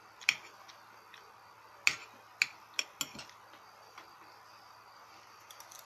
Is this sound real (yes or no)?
yes